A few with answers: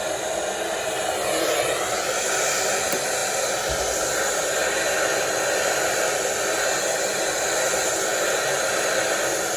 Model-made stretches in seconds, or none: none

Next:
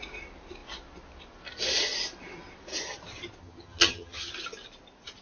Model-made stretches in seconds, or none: 3.4-4.3

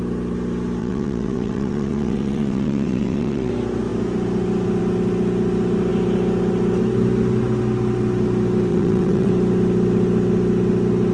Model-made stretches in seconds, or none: 0.8-3.5; 8.7-9.3

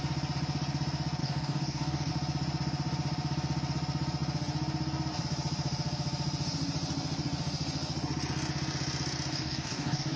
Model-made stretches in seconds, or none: 1.2-2.1; 9.3-10.2